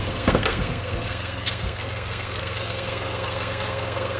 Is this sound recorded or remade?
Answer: remade